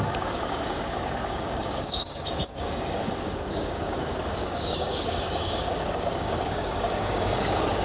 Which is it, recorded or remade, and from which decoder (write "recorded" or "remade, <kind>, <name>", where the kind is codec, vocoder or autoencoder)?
remade, codec, DAC